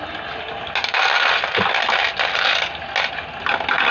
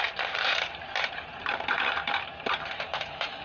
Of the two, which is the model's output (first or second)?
second